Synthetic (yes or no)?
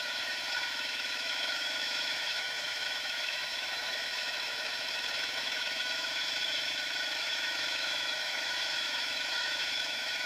yes